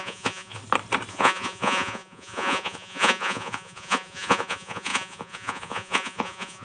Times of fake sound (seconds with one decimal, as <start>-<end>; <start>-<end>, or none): 0.0-0.6; 1.1-6.6